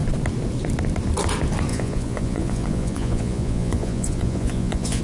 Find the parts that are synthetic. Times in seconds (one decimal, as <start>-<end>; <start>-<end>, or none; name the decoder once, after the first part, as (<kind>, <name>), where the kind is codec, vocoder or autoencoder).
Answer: 1.7-5.0 (vocoder, Vocos)